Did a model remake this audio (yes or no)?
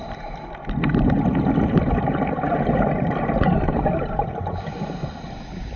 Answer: no